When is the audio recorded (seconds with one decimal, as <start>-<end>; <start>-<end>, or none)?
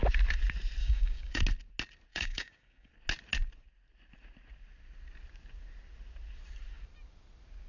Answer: 0.0-0.8; 1.4-2.1; 2.9-7.7